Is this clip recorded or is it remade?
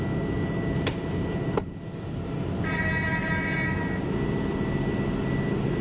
recorded